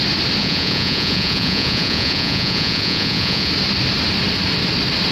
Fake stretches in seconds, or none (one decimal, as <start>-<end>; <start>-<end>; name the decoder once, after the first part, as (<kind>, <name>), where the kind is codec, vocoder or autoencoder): 0.4-3.5 (vocoder, Vocos)